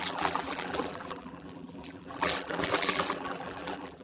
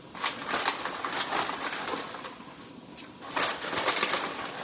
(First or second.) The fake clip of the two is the first